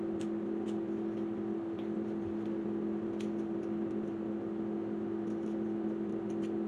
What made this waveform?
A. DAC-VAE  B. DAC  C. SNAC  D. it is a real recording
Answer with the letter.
D